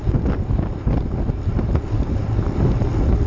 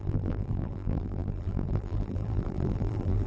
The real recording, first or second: first